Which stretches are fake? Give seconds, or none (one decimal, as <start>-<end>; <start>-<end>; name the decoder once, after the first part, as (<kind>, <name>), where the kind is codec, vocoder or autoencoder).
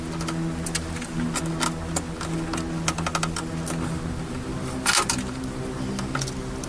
none